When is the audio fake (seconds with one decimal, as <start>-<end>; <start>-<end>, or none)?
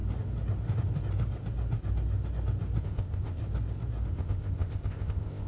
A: 2.8-3.4; 4.1-5.5